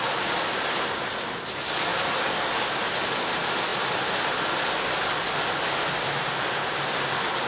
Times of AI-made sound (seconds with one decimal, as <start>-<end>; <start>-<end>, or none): none